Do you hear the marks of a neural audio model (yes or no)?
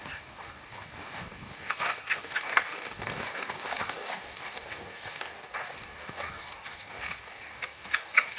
yes